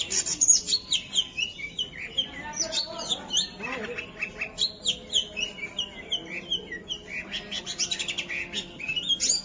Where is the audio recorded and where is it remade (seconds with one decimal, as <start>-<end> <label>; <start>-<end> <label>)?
0.0-9.4 recorded